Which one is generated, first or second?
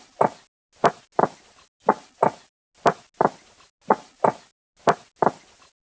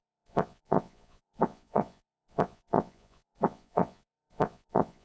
second